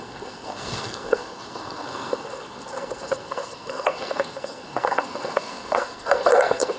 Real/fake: fake